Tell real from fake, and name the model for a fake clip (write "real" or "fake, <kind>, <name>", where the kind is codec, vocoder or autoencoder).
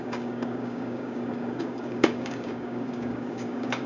fake, codec, DAC